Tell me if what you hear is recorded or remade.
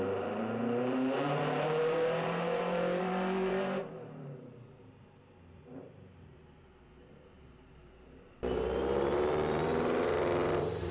remade